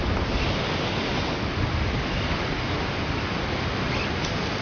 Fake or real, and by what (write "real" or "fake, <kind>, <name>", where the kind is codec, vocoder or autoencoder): real